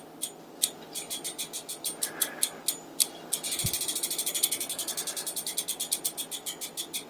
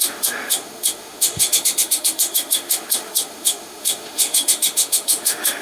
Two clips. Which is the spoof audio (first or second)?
second